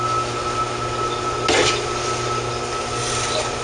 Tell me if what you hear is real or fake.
real